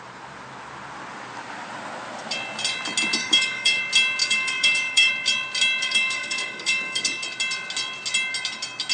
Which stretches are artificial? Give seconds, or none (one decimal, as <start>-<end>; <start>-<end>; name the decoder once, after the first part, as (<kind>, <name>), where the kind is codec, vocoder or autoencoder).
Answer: 3.2-3.8 (codec, DAC); 4.2-5.1; 5.8-7.2